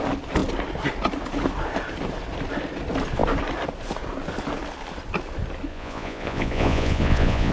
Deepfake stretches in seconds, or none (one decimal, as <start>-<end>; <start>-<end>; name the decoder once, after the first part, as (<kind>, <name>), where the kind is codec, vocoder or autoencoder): 5.7-7.5 (vocoder, Vocos)